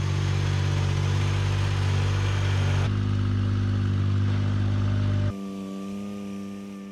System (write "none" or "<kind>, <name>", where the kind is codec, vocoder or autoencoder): none